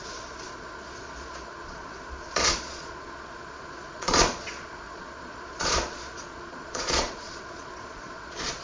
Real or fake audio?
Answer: fake